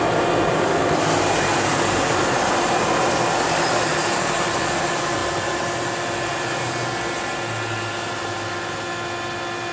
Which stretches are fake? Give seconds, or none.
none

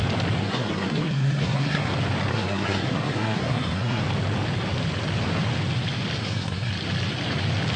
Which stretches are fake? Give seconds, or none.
0.4-1.9 (codec, SNAC); 2.3-4.0; 6.2-6.7

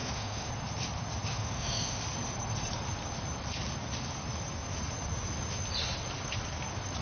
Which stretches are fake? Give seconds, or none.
0.0-0.5 (autoencoder, DAC-VAE); 1.3-2.0

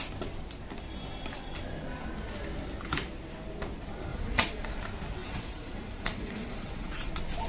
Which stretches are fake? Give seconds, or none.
4.1-4.8 (vocoder, Vocos); 5.2-7.1

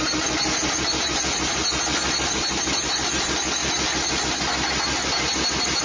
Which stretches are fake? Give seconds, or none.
none